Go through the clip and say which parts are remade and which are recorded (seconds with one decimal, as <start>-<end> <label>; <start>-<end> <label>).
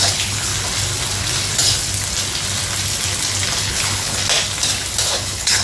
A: 0.0-0.5 remade; 0.5-3.6 recorded; 3.6-4.2 remade; 4.2-5.0 recorded; 5.0-5.6 remade